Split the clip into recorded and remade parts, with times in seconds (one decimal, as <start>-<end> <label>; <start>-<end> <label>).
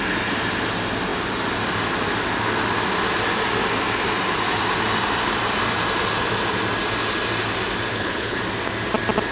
0.0-7.9 recorded; 7.9-8.4 remade; 8.4-9.3 recorded